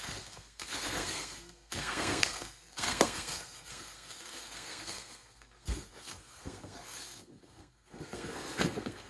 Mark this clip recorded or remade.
remade